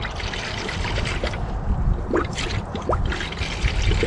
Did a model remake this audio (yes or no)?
no